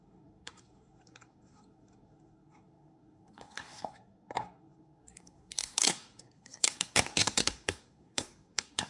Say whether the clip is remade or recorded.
remade